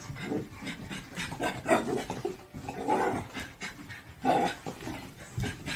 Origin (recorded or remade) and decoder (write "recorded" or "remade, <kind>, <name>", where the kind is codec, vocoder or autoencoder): recorded